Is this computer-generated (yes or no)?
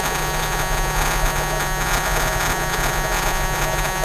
yes